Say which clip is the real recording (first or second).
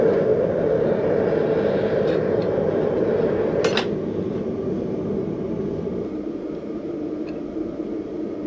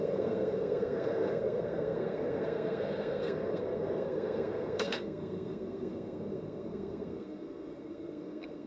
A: first